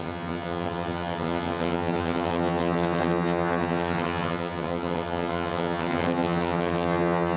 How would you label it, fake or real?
fake